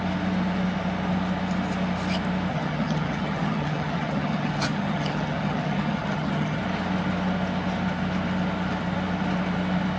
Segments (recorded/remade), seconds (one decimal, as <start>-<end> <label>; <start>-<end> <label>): 0.0-2.5 recorded; 2.5-6.6 remade; 6.6-10.0 recorded